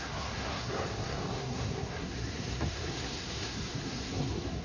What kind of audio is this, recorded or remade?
remade